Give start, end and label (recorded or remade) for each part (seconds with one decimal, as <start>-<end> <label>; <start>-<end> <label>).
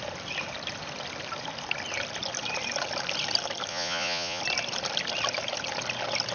0.0-3.7 recorded; 3.7-4.4 remade; 4.4-6.3 recorded